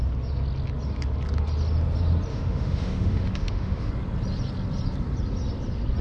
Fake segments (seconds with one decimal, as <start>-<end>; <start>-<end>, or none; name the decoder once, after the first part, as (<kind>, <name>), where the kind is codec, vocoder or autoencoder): 2.3-3.9 (autoencoder, DAC-VAE)